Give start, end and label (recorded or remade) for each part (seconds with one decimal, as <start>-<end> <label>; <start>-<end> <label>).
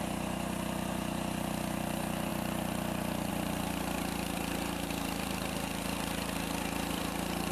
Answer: 0.0-2.3 remade; 2.3-3.3 recorded; 3.3-7.5 remade